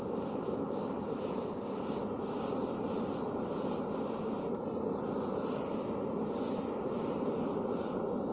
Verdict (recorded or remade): recorded